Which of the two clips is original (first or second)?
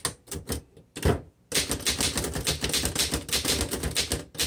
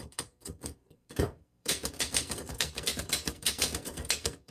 first